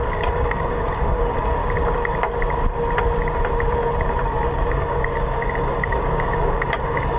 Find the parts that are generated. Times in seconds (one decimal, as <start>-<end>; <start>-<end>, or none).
0.0-1.6; 4.7-7.2